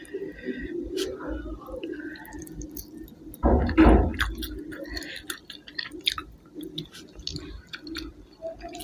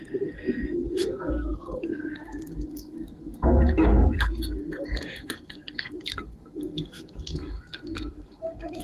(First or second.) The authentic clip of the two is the first